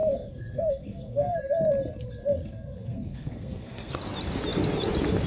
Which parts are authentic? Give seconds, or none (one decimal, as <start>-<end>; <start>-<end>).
1.5-2.4; 3.9-5.3